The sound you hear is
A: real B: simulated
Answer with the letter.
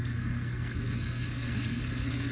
B